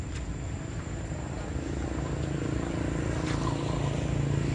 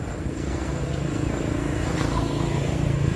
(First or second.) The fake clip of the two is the second